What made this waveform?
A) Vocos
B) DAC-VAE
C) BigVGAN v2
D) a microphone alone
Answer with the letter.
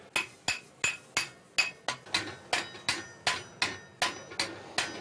D